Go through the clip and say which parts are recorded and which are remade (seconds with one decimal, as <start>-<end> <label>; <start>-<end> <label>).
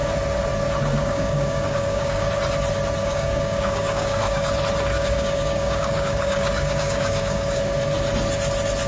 0.0-0.9 recorded; 0.9-2.3 remade; 2.3-3.0 recorded; 3.0-4.5 remade; 4.5-4.9 recorded; 4.9-7.6 remade; 7.6-8.9 recorded